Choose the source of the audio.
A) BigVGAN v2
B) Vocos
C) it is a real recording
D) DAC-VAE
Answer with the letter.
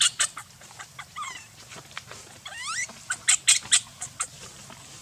C